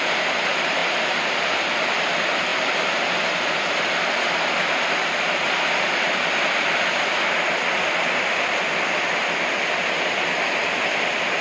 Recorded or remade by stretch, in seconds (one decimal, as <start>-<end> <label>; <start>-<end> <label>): 0.0-11.4 recorded